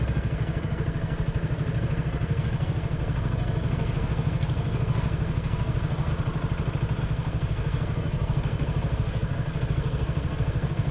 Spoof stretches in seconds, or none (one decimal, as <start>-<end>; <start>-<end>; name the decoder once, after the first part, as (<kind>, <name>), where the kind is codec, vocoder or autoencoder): 0.0-6.1 (codec, SNAC); 7.0-10.9